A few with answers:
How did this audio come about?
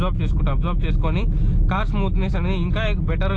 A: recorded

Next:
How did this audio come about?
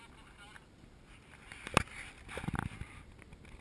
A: recorded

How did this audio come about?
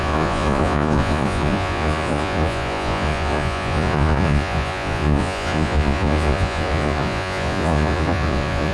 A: remade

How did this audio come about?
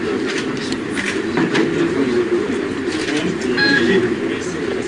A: recorded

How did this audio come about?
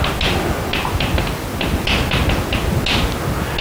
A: recorded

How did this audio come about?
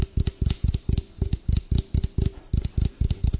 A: recorded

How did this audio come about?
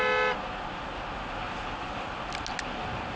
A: recorded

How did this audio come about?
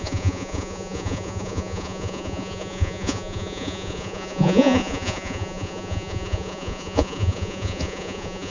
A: remade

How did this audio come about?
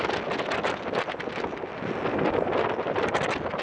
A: recorded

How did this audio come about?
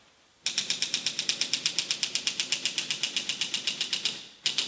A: recorded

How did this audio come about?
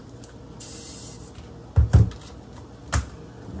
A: recorded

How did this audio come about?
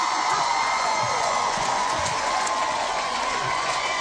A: remade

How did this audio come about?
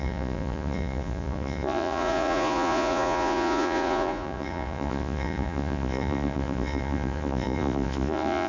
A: remade